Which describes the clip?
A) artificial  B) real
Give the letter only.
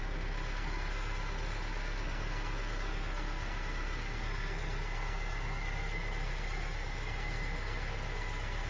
A